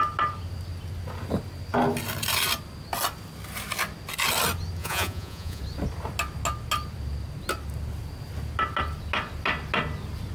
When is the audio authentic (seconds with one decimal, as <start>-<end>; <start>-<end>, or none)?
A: 0.0-4.8; 5.6-10.3